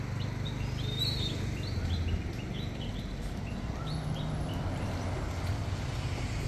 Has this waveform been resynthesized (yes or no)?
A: no